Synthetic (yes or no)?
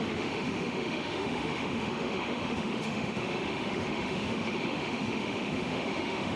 yes